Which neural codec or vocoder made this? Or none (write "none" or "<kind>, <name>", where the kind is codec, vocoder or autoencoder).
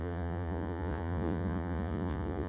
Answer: vocoder, Vocos